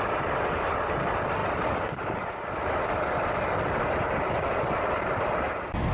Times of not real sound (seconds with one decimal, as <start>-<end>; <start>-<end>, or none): none